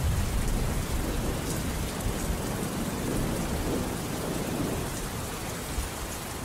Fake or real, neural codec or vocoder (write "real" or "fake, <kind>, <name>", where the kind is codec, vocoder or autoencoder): real